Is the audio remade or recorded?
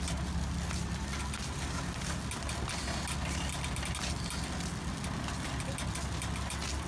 recorded